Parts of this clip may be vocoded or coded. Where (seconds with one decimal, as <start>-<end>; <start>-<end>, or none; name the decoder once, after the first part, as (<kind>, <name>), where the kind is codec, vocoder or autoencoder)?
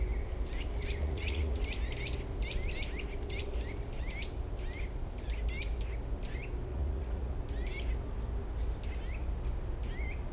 1.0-1.6 (vocoder, Vocos); 6.7-7.3